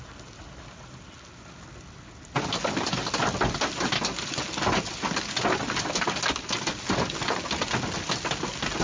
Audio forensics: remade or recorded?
recorded